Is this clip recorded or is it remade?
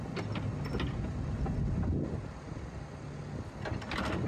recorded